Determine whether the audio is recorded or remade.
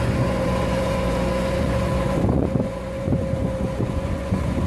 remade